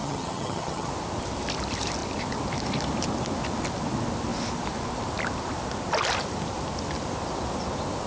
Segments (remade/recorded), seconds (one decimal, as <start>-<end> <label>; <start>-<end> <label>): 0.0-0.9 remade; 0.9-8.1 recorded